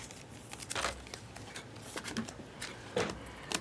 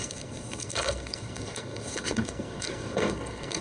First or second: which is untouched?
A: first